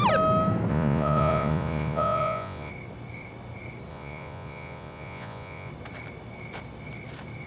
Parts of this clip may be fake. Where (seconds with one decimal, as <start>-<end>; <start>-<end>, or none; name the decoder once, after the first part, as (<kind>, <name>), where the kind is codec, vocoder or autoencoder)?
0.7-2.7 (vocoder, Vocos); 3.9-5.7